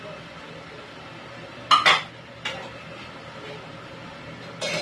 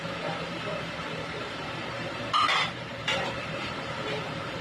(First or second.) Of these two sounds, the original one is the first